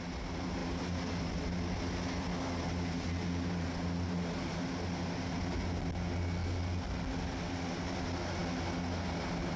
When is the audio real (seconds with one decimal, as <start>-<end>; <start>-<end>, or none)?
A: 0.0-9.6